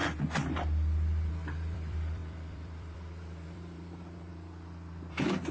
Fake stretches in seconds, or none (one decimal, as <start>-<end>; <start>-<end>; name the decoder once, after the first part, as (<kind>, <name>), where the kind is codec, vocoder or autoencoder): 1.3-5.5 (vocoder, BigVGAN v2)